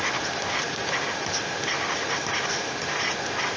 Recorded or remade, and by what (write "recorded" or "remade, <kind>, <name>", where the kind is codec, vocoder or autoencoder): recorded